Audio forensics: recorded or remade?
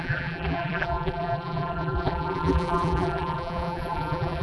remade